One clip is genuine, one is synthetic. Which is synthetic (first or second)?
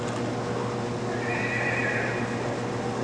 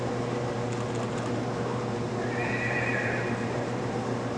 second